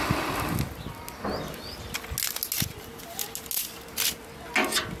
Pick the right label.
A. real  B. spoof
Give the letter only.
A